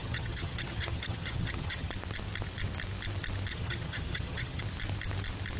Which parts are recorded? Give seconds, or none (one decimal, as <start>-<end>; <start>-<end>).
1.9-3.5; 4.6-5.6